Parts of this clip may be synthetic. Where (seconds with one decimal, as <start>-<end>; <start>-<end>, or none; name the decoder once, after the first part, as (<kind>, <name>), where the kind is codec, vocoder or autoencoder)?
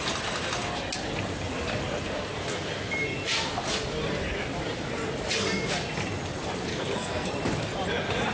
6.7-7.3 (codec, SNAC)